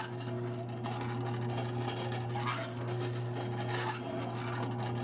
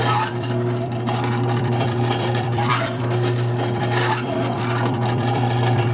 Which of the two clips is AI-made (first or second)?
second